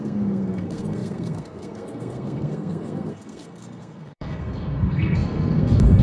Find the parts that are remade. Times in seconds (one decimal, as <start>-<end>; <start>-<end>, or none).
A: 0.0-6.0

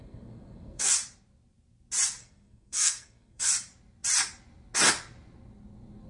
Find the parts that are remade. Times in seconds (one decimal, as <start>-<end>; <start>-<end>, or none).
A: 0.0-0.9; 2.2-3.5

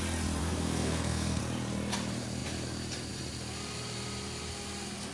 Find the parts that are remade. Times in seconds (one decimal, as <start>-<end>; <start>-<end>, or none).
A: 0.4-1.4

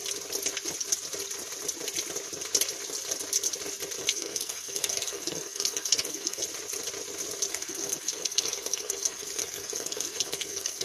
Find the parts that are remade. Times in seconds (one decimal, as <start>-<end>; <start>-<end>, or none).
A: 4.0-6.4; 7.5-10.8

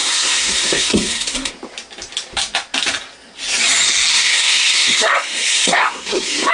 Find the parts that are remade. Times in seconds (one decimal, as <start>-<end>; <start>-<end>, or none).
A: 0.0-1.5; 4.1-6.5